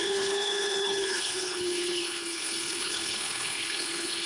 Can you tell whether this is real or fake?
fake